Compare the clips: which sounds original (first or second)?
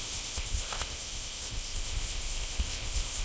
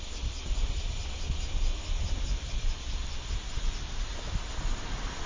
second